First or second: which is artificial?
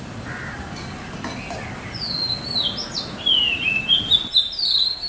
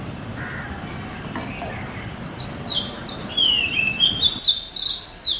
second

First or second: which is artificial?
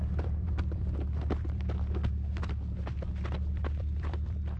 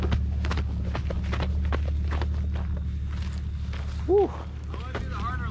first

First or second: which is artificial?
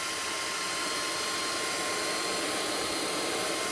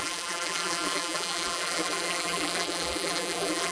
second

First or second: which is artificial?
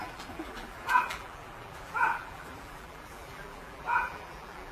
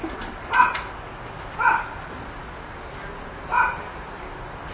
first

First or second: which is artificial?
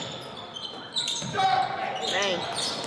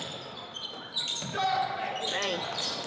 second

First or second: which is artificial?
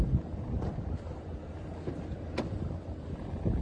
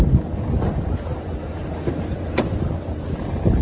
first